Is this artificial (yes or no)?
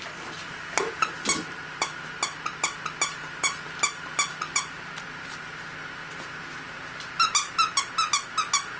no